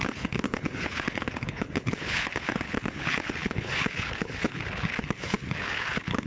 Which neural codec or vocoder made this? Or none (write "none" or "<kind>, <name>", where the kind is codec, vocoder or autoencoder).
codec, HILCodec